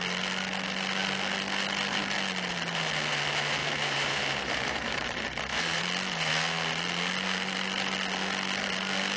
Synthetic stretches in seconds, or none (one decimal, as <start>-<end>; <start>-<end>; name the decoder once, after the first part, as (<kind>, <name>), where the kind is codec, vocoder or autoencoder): 3.6-5.8 (vocoder, BigVGAN v2)